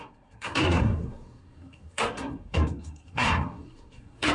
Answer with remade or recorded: remade